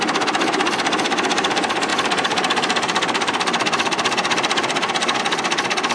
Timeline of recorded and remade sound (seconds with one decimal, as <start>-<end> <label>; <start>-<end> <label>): 0.0-1.9 recorded; 1.9-5.2 remade; 5.2-5.9 recorded

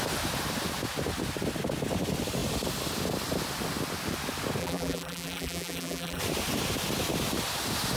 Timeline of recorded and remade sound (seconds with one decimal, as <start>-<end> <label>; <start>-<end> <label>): 0.0-4.6 recorded; 4.6-6.2 remade; 6.2-8.0 recorded

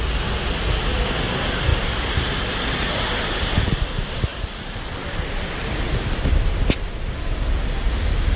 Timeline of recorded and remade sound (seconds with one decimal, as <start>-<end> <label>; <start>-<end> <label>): 0.0-1.7 recorded; 1.7-3.6 remade; 3.6-4.3 recorded; 4.3-7.4 remade; 7.4-8.4 recorded

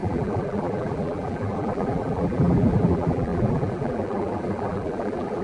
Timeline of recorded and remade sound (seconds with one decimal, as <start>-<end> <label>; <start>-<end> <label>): 0.0-5.4 remade